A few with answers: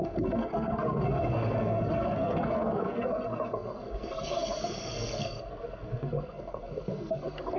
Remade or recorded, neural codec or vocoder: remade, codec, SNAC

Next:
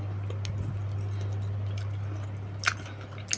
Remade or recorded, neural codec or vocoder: recorded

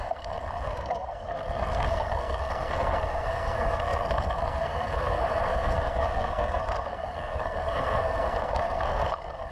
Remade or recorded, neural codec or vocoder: remade, codec, SNAC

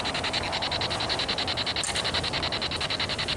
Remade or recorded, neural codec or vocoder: recorded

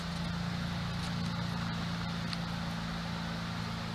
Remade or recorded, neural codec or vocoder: recorded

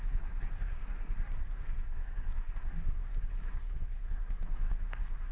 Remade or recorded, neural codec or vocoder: remade, codec, SNAC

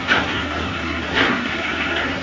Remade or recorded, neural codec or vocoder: remade, codec, SNAC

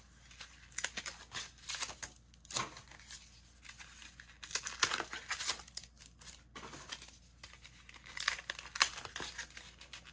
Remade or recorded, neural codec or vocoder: recorded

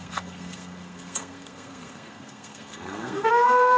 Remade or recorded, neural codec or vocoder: remade, codec, SNAC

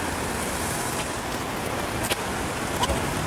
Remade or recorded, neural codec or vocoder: recorded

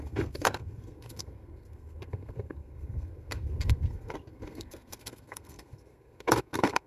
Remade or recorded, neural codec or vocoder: remade, codec, SNAC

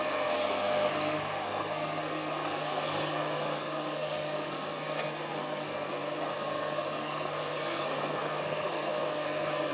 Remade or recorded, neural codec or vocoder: remade, codec, SNAC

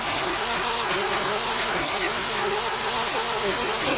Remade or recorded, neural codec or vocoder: remade, codec, SNAC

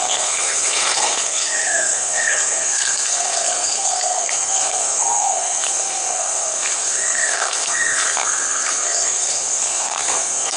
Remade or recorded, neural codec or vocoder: remade, codec, SNAC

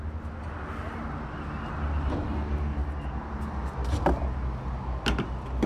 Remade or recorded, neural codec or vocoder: recorded